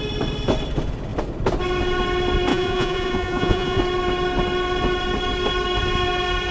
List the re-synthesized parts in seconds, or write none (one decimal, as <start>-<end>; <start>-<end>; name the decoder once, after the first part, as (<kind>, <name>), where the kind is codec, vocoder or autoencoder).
2.5-3.8 (vocoder, Vocos)